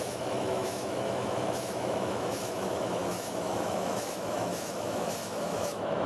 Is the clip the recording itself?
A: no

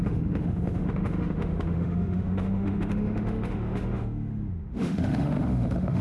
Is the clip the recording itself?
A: no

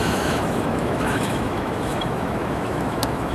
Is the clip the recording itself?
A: no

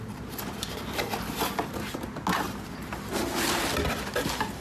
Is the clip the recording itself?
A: yes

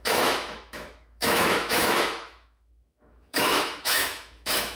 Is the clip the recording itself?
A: no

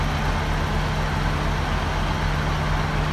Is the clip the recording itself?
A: yes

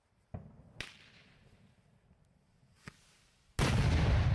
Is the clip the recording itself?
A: yes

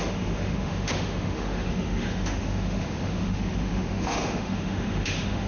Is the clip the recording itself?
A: no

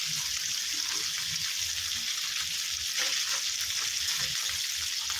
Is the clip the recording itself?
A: yes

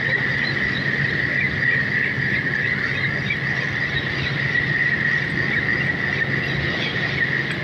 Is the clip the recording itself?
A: yes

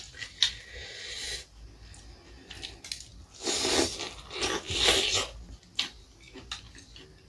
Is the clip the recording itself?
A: yes